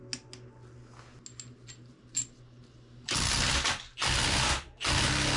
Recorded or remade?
recorded